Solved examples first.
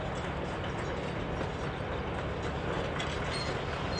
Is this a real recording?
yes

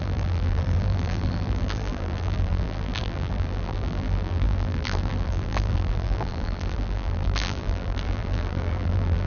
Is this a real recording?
no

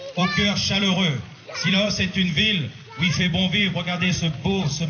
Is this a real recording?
no